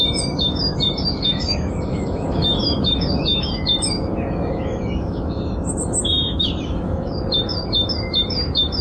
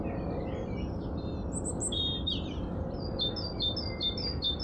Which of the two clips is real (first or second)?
second